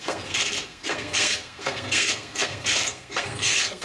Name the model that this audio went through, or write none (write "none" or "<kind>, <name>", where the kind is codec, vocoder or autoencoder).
codec, SNAC